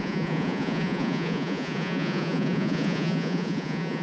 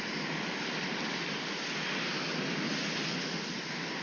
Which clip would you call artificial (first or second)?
first